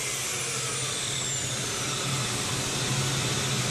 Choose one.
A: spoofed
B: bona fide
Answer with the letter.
B